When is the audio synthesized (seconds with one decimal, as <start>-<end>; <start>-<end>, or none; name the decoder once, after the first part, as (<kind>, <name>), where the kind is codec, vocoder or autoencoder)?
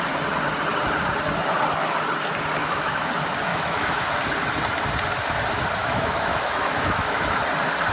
2.6-3.1 (autoencoder, DAC-VAE); 3.5-4.2; 5.8-7.2